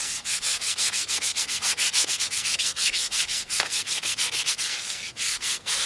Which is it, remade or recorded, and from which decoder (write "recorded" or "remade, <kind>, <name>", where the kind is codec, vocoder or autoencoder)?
remade, codec, SNAC